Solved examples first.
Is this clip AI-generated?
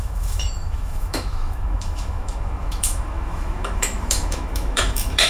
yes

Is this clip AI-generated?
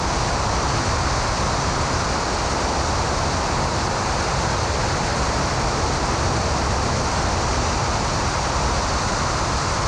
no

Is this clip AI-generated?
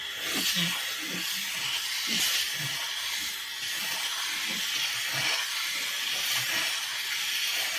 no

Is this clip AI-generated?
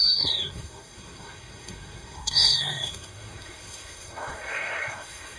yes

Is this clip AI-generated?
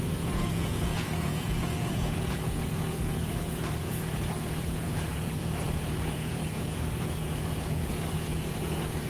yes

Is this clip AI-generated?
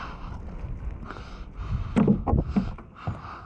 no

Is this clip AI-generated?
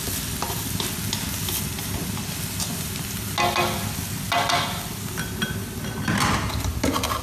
no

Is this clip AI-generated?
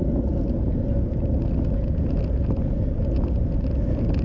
no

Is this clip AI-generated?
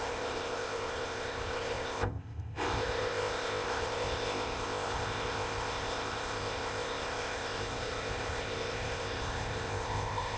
yes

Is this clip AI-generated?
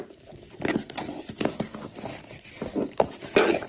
no